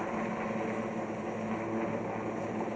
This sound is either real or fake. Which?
real